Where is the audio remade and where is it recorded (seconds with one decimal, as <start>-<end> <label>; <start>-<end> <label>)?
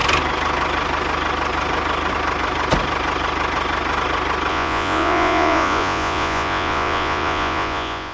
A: 0.0-4.5 recorded; 4.5-8.1 remade